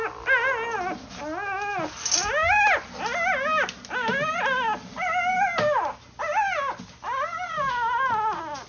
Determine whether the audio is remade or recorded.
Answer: recorded